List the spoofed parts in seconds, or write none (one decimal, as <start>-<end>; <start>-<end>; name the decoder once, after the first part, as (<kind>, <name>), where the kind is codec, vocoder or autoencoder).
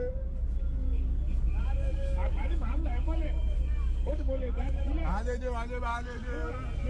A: 0.8-4.8 (codec, DAC); 5.9-6.5